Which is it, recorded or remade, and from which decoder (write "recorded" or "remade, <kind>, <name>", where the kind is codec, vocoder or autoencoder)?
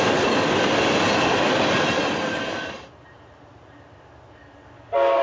recorded